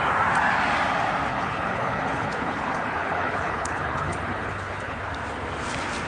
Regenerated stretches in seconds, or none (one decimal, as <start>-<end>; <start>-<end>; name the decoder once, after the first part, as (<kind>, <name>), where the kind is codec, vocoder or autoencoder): 1.3-5.0 (codec, HILCodec)